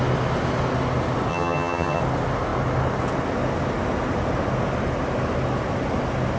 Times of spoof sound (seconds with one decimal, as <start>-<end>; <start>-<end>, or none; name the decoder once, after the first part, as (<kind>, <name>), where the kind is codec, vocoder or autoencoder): 1.3-2.0 (vocoder, HiFi-GAN)